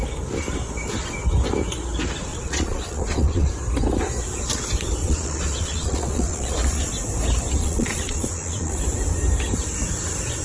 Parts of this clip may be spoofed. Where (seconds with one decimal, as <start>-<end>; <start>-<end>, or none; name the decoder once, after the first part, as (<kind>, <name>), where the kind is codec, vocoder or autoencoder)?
2.3-3.5 (vocoder, Vocos); 5.0-6.9; 7.6-8.8